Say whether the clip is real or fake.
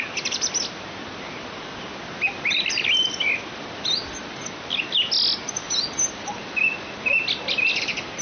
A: real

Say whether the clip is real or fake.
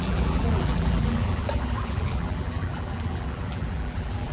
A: fake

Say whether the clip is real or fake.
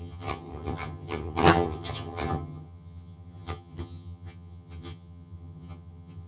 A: fake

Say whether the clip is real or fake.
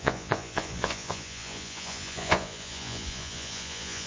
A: fake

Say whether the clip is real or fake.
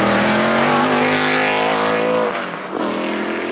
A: real